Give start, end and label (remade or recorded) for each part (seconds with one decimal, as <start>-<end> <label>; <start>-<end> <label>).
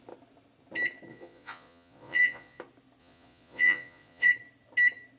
0.0-1.1 recorded; 1.1-2.6 remade; 2.6-3.0 recorded; 3.0-4.3 remade; 4.3-5.2 recorded